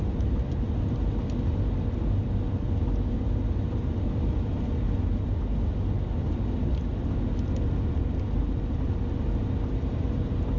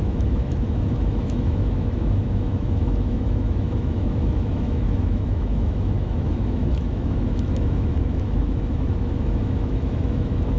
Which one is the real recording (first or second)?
first